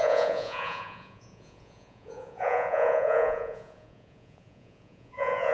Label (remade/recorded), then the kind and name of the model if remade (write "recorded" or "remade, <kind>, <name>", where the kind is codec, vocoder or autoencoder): remade, vocoder, Vocos